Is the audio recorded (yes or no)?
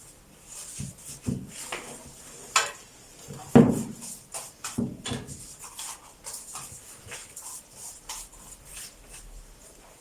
yes